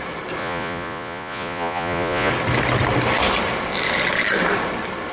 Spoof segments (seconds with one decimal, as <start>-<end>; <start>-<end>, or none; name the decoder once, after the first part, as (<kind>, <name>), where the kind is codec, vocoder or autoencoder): 0.4-2.3 (vocoder, Vocos)